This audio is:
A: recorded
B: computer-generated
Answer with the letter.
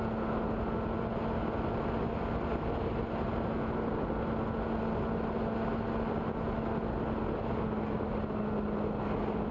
A